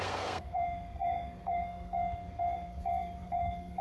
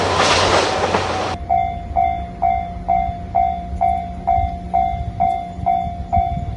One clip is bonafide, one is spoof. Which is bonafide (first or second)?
second